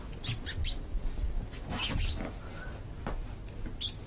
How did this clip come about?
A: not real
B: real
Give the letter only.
B